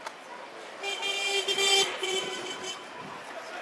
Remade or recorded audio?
recorded